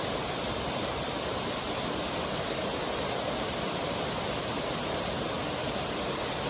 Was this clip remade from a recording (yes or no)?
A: no